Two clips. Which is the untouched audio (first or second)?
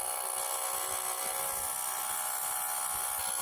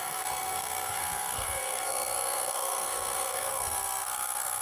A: first